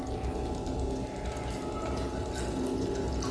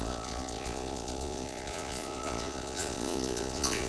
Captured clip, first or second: first